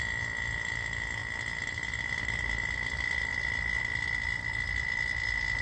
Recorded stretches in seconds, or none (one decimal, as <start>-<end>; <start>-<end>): 0.0-5.6